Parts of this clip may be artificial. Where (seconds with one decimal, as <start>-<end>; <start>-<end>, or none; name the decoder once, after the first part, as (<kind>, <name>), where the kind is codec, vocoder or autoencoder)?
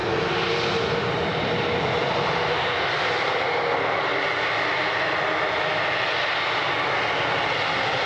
none